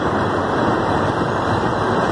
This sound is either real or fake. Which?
fake